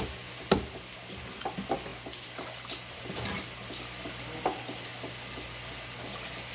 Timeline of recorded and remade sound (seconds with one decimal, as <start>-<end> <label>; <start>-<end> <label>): 0.0-6.5 recorded